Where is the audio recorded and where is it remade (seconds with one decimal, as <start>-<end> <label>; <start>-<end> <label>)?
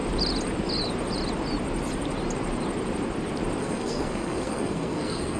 0.0-3.6 recorded; 3.6-5.4 remade